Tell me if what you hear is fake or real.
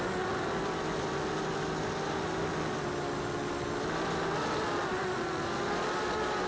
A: real